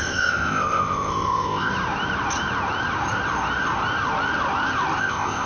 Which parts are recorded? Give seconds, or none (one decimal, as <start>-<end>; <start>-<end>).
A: 1.7-5.0